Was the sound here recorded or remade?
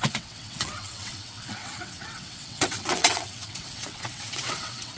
remade